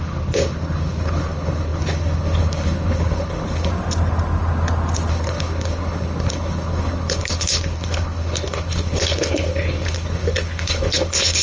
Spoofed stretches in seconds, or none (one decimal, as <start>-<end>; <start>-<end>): 0.0-3.7; 5.1-11.4